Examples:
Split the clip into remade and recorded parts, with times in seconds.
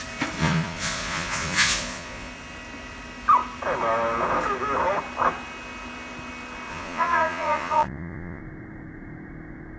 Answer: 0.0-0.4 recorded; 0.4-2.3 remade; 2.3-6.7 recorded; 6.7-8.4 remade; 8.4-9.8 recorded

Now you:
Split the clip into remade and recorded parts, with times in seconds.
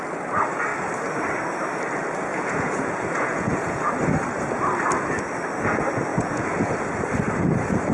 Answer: 0.0-2.3 recorded; 2.3-3.9 remade; 3.9-6.1 recorded; 6.1-6.7 remade; 6.7-7.9 recorded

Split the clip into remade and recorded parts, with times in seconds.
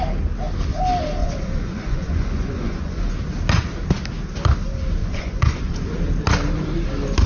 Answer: 0.0-1.2 recorded; 1.2-3.1 remade; 3.1-5.0 recorded; 5.0-5.8 remade; 5.8-7.3 recorded